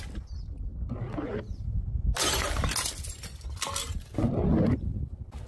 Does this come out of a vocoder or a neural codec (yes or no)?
no